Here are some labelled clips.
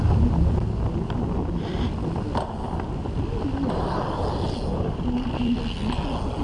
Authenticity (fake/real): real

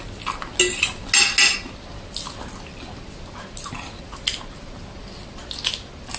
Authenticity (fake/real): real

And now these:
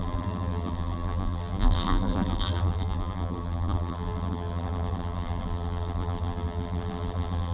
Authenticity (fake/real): fake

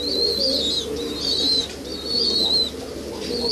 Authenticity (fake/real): real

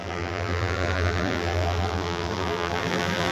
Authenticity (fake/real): fake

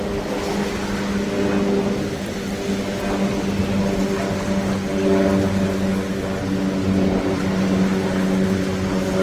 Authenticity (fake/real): real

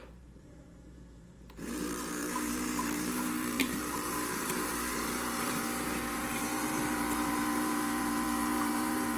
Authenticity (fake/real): fake